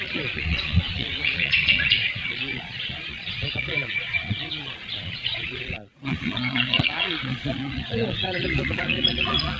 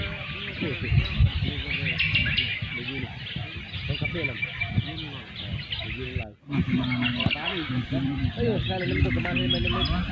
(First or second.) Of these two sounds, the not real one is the first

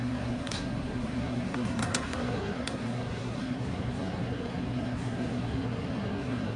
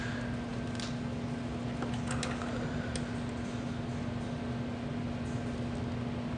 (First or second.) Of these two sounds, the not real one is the first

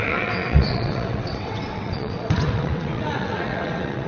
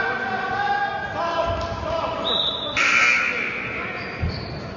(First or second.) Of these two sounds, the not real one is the first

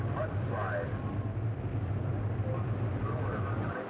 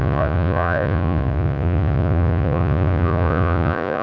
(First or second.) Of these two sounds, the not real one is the second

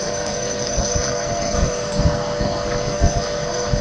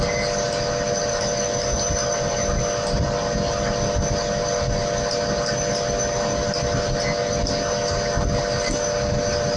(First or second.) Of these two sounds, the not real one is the first